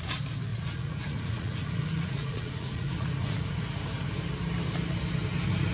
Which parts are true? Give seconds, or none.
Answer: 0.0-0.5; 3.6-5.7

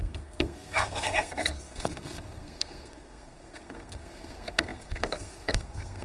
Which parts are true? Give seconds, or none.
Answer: none

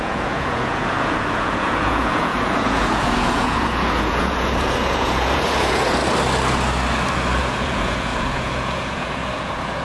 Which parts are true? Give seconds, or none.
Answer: 6.0-7.4

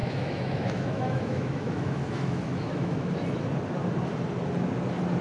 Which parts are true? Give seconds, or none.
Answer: 3.1-5.2

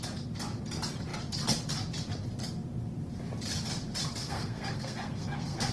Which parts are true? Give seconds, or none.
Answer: 0.0-4.2

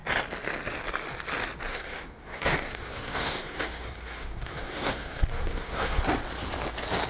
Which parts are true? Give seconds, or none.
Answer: 0.0-1.7; 6.0-7.1